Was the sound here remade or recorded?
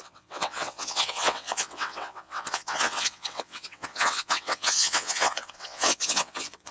remade